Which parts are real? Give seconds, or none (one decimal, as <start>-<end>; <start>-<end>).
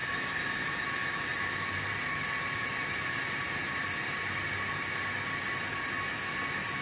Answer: 0.0-6.8